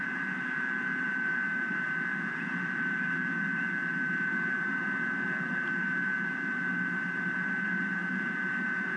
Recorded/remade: recorded